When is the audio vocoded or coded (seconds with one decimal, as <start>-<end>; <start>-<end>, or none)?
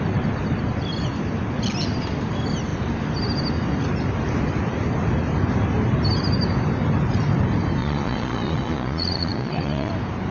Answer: 7.8-9.9